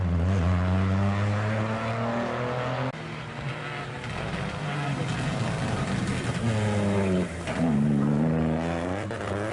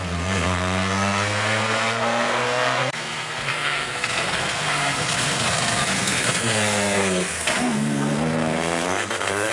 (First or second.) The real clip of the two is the first